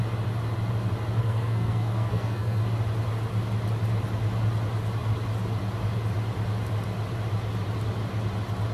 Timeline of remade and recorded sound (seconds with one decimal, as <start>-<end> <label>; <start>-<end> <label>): 0.0-1.2 recorded; 1.2-2.6 remade; 2.6-8.7 recorded